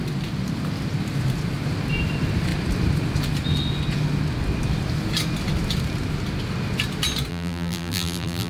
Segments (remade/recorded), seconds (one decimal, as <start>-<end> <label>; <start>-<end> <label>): 0.0-7.3 recorded; 7.3-8.5 remade